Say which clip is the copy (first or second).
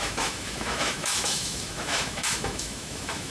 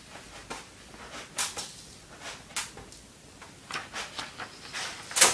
first